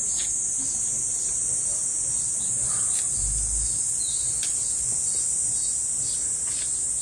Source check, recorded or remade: recorded